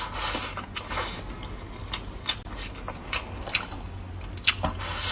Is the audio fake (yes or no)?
no